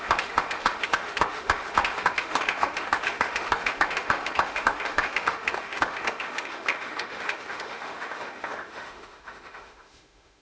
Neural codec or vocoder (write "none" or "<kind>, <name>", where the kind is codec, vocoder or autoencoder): autoencoder, DAC-VAE